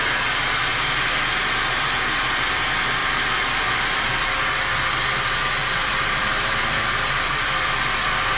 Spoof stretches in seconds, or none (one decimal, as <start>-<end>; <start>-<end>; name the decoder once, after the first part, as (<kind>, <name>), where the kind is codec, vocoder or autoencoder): 3.0-4.4 (vocoder, BigVGAN v2); 5.6-8.4